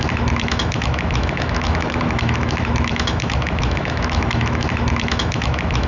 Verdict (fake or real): fake